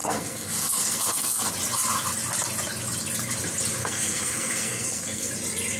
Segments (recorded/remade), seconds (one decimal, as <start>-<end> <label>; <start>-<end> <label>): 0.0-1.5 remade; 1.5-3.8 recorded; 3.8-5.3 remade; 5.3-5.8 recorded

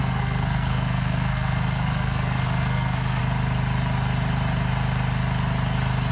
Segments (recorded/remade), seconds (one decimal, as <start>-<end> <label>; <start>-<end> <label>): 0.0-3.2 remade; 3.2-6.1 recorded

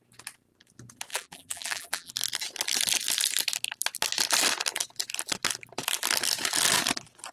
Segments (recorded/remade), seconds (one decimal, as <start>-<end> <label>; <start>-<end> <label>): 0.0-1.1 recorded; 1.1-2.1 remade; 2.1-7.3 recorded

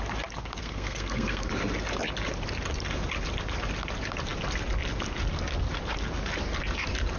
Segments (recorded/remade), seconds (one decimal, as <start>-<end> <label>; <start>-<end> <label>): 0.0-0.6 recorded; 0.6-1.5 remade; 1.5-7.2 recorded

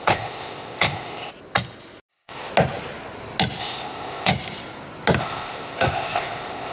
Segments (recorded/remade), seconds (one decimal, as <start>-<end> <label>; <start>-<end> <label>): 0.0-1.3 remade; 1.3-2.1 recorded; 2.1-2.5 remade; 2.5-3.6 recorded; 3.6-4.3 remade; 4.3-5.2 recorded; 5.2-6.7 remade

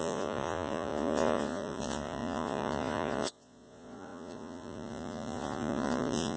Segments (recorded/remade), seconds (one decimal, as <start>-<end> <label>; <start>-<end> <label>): 0.0-6.4 remade

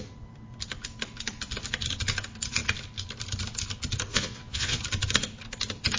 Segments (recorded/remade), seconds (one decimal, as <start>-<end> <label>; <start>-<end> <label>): 0.0-4.1 recorded; 4.1-4.8 remade; 4.8-6.0 recorded